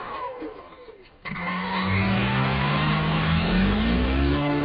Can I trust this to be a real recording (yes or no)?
no